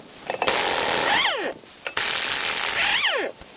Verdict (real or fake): real